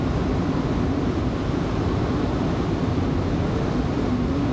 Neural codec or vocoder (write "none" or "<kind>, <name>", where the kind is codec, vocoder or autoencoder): none